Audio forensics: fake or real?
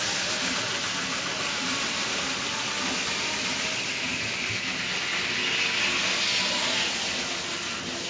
real